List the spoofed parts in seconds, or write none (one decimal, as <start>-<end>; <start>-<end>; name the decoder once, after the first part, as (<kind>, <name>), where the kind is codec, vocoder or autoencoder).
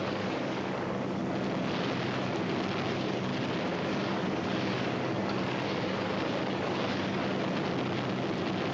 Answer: 0.0-1.2 (codec, DAC); 2.9-3.3; 3.8-7.2